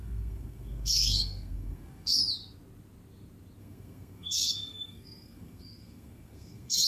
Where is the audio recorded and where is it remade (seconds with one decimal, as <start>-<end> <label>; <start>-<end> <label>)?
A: 0.0-2.2 remade; 2.2-3.6 recorded; 3.6-6.9 remade